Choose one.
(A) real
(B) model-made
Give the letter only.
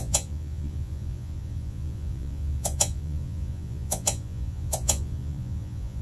B